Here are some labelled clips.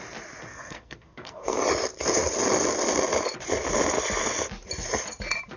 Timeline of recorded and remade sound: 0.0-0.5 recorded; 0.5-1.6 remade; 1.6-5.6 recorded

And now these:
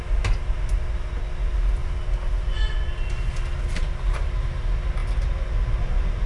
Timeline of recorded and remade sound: 0.0-6.3 recorded

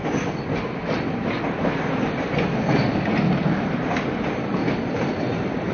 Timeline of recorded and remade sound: 0.0-4.6 recorded; 4.6-5.1 remade; 5.1-5.7 recorded